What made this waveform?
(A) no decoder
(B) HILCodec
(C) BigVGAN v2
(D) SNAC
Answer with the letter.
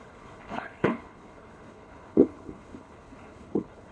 B